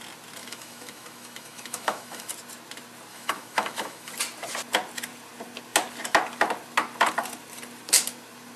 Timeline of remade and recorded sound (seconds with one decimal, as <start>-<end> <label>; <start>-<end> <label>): 0.0-0.4 recorded; 0.4-2.3 remade; 2.3-3.1 recorded; 3.1-4.1 remade; 4.1-8.6 recorded